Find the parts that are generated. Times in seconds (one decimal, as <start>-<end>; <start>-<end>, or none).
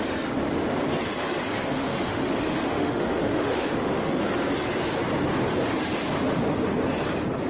1.6-4.1